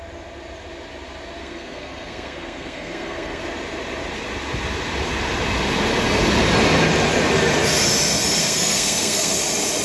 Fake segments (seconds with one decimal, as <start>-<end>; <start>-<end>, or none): 1.4-3.4; 8.4-9.4